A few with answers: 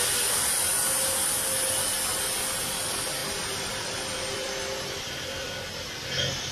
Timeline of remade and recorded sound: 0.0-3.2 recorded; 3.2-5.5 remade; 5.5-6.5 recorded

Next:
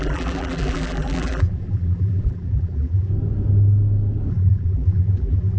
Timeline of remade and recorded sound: 0.0-3.1 remade; 3.1-4.3 recorded; 4.3-5.6 remade

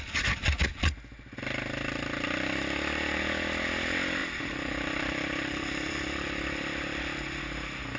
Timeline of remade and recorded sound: 0.0-4.2 recorded; 4.2-7.4 remade; 7.4-8.0 recorded

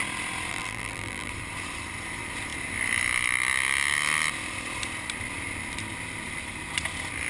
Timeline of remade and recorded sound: 0.0-0.5 recorded; 0.5-1.3 remade; 1.3-7.3 recorded

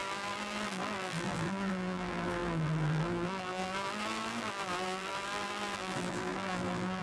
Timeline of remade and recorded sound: 0.0-7.0 remade